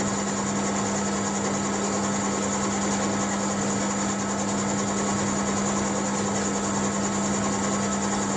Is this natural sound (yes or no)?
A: yes